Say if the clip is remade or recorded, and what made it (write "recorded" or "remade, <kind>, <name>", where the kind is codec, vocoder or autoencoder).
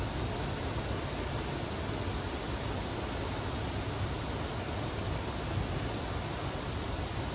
recorded